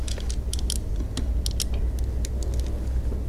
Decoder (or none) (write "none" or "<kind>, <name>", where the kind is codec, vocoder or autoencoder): none